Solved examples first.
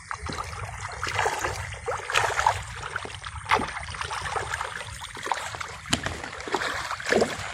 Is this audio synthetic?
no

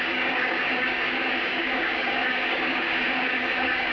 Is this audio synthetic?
yes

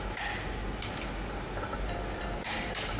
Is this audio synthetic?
no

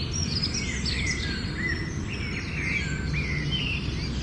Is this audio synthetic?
no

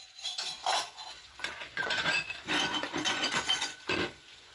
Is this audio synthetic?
yes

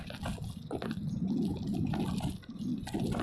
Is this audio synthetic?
no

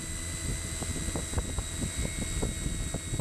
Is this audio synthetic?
no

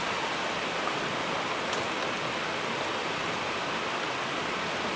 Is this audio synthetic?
no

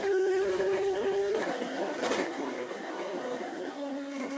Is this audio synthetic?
yes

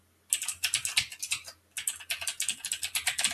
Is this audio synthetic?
no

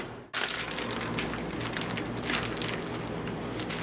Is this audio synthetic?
no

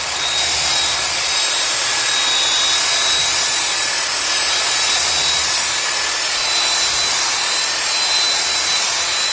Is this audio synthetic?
no